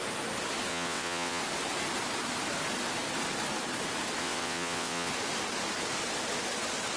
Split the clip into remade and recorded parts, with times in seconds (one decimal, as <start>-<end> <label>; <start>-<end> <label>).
0.0-0.7 recorded; 0.7-1.4 remade; 1.4-4.2 recorded; 4.2-5.1 remade; 5.1-7.0 recorded